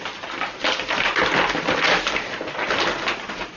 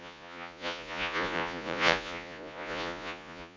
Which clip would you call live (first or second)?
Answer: first